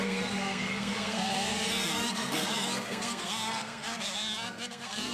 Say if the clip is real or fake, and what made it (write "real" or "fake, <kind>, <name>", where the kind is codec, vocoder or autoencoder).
fake, codec, SNAC